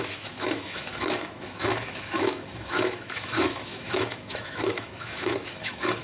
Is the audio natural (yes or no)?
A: no